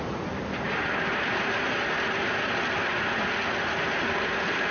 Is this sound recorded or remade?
recorded